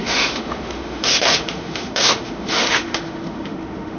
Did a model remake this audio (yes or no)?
yes